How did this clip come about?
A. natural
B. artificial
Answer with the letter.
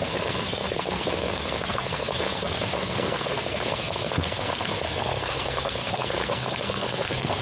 B